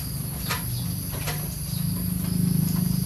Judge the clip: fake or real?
real